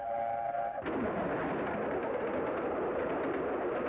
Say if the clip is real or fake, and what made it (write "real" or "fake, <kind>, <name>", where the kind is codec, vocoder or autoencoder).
real